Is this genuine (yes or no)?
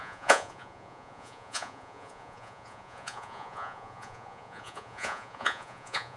no